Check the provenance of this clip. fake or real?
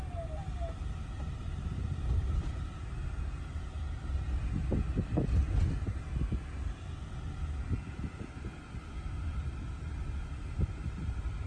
real